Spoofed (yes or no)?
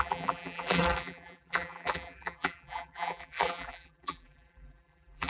yes